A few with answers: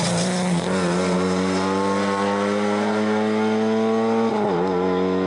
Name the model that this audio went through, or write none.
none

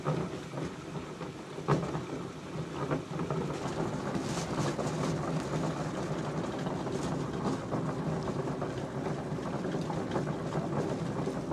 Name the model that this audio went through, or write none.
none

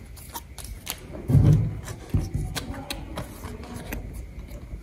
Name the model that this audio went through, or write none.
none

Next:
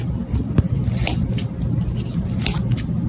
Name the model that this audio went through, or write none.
none